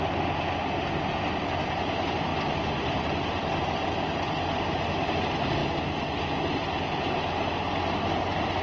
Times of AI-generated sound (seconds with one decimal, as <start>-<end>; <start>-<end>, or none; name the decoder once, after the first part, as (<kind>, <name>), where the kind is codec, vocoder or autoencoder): 2.3-4.8 (vocoder, BigVGAN v2)